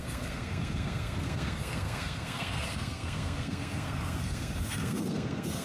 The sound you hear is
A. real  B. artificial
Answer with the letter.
B